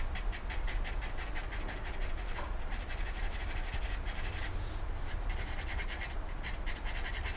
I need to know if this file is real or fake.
fake